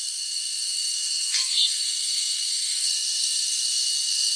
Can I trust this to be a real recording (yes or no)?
no